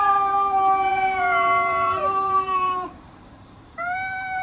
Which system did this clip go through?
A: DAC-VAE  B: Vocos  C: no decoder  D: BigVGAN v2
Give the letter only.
D